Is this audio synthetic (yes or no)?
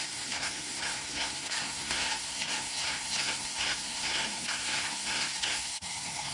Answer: yes